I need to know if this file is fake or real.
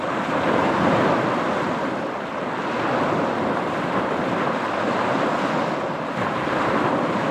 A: real